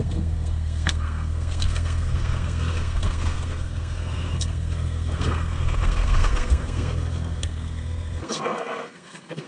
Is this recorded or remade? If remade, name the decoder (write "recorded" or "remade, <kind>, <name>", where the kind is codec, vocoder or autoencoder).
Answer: remade, codec, SNAC